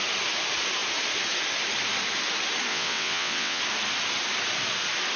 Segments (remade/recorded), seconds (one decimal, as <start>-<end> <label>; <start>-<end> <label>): 0.0-2.7 recorded; 2.7-3.6 remade; 3.6-5.2 recorded